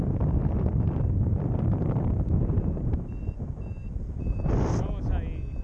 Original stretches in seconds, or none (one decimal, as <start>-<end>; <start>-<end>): 0.0-1.3; 4.4-5.6